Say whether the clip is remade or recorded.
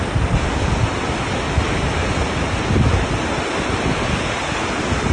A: recorded